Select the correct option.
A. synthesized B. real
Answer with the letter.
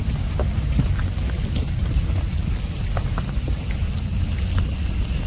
B